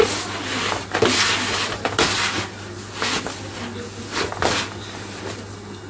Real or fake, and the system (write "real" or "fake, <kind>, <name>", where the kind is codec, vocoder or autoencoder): real